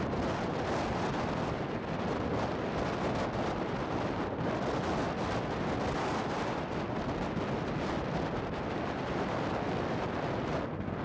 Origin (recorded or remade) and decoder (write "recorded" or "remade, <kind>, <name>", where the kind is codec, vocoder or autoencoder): recorded